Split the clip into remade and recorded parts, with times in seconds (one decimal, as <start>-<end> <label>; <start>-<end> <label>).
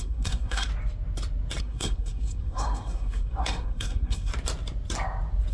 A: 0.0-0.7 remade; 0.7-1.6 recorded; 1.6-4.3 remade; 4.3-5.5 recorded